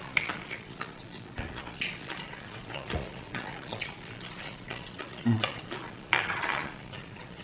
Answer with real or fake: fake